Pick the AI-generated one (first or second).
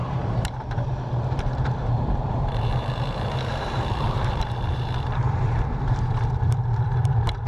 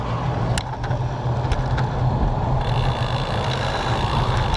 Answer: first